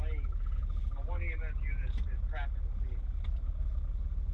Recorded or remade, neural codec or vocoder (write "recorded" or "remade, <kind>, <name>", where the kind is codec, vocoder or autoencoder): recorded